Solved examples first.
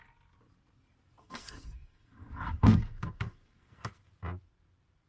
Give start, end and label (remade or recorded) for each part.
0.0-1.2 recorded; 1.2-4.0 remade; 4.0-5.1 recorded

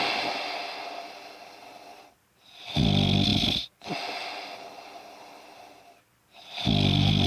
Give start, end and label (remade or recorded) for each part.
0.0-7.3 recorded

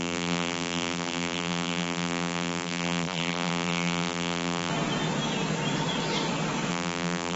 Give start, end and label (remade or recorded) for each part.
0.0-4.7 remade; 4.7-6.7 recorded; 6.7-7.4 remade

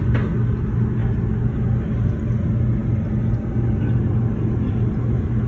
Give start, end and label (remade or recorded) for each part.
0.0-5.5 recorded

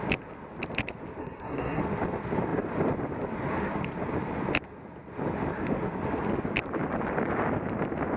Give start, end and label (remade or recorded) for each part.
0.0-1.2 recorded; 1.2-1.8 remade; 1.8-8.2 recorded

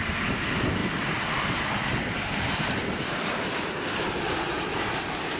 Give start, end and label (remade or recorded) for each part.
0.0-5.4 recorded